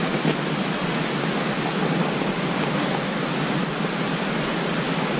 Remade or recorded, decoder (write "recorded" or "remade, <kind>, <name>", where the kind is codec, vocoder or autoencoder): recorded